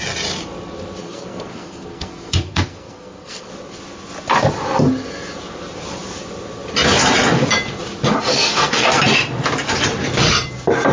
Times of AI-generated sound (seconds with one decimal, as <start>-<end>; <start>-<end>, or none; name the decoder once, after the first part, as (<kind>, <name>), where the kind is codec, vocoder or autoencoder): 1.0-3.5 (codec, SNAC); 8.3-9.0